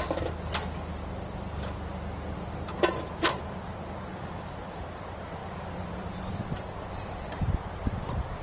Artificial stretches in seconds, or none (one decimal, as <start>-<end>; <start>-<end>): 4.6-8.4